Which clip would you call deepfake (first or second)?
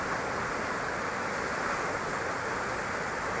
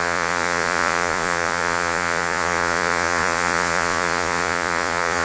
second